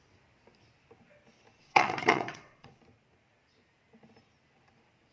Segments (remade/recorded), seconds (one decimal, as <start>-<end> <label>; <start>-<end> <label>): 0.0-1.6 recorded; 1.6-2.8 remade; 2.8-5.1 recorded